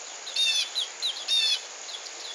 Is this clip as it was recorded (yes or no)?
yes